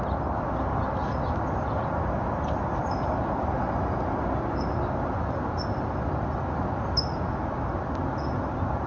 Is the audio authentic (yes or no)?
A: yes